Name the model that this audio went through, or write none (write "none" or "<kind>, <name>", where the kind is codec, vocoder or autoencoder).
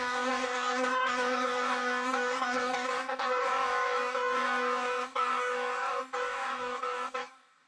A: codec, DAC